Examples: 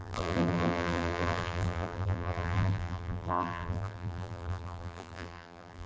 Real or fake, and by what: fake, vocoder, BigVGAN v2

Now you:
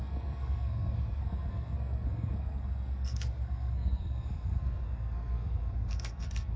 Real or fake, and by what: fake, codec, SNAC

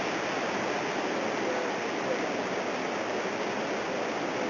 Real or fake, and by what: real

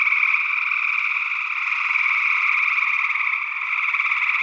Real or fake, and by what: real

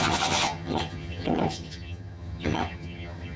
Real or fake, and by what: fake, vocoder, HiFi-GAN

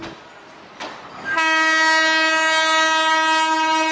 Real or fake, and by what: real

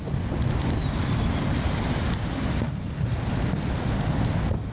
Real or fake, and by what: real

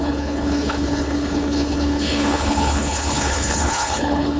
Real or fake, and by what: fake, codec, HILCodec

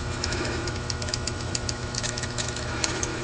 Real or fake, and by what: fake, autoencoder, DAC-VAE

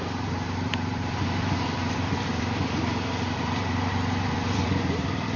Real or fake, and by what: fake, vocoder, BigVGAN v2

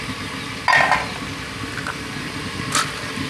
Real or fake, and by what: real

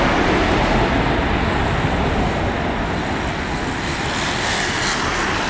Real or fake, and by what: real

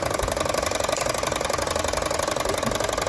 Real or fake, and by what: real